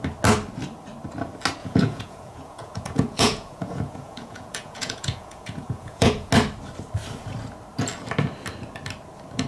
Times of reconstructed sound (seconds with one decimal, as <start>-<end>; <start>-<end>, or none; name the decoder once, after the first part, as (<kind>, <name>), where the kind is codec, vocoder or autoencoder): 1.6-6.3 (vocoder, Vocos)